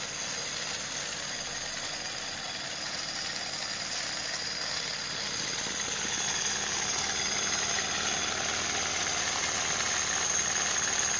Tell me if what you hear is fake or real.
real